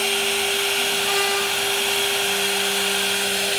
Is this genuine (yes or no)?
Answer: yes